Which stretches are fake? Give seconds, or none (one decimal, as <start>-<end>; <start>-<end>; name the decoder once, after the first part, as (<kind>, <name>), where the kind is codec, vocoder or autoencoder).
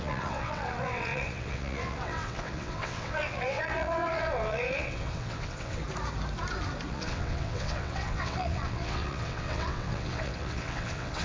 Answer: 0.0-5.8 (vocoder, WaveNeXt); 6.9-11.2